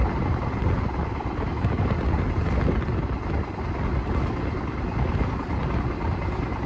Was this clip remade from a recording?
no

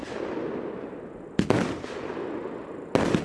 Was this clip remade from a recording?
no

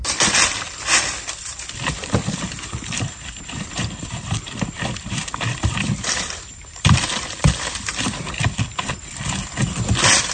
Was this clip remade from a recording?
yes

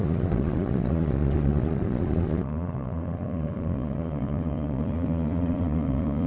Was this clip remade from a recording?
yes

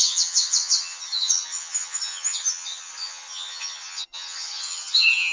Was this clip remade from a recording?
yes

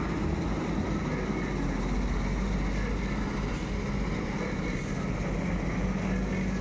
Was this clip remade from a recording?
no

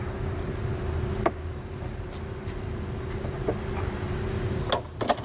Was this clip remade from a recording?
no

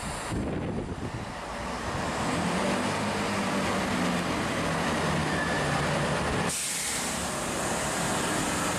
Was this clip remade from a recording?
no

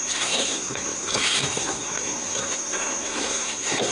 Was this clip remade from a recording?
yes